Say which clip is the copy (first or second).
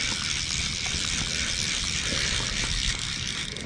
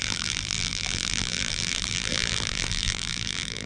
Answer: second